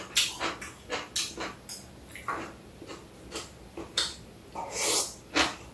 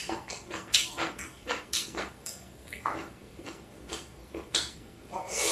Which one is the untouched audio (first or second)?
first